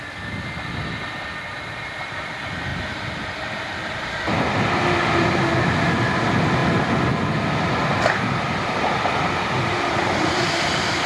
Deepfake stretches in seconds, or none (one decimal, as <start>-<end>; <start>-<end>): none